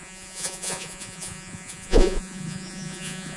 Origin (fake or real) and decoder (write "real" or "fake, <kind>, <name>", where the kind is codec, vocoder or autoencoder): fake, vocoder, Vocos